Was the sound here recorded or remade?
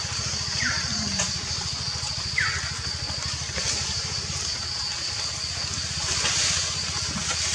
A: recorded